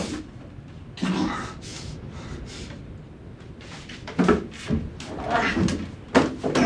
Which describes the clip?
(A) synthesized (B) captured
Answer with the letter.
B